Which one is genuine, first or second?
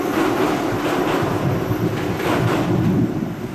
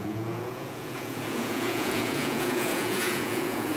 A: first